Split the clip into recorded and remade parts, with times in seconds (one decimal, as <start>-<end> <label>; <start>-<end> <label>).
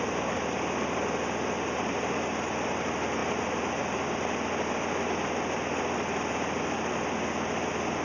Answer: 0.0-8.0 recorded